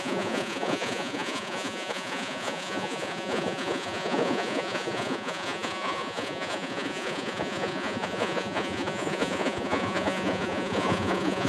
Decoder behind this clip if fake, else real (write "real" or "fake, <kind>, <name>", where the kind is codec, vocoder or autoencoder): fake, vocoder, Vocos